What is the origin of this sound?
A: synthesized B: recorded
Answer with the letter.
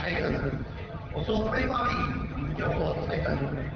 A